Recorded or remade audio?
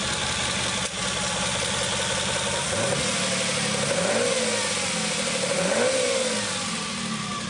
recorded